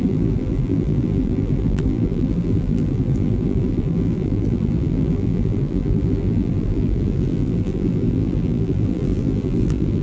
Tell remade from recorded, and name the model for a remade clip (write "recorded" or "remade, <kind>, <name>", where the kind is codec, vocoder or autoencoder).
remade, vocoder, BigVGAN v2